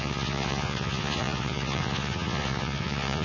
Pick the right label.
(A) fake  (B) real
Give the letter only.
A